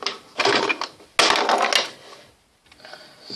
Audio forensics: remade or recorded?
recorded